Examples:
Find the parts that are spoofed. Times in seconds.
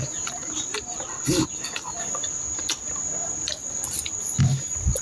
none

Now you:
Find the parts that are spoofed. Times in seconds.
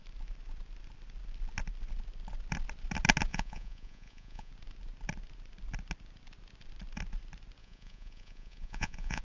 3.3-4.5 (vocoder, Vocos); 7.6-9.2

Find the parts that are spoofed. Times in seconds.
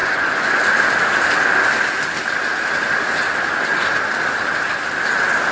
0.0-0.6 (vocoder, Vocos)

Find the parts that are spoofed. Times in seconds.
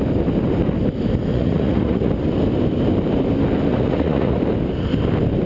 1.3-2.1 (vocoder, Vocos); 3.7-4.4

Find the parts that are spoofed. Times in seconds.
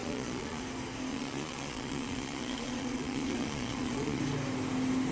0.0-0.6 (vocoder, Vocos); 1.1-4.2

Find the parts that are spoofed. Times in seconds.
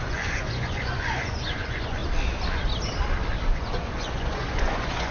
0.0-2.0 (vocoder, Vocos); 3.5-5.1